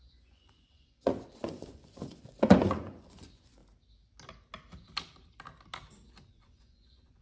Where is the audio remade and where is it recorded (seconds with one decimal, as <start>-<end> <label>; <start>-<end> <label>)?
0.0-3.6 remade; 3.6-6.3 recorded; 6.3-7.2 remade